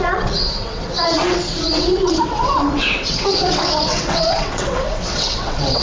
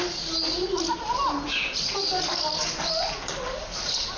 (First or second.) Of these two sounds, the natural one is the second